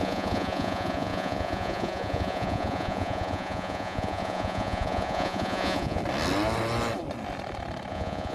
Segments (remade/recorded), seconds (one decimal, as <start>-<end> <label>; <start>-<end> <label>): 0.0-6.0 remade; 6.0-7.9 recorded; 7.9-8.3 remade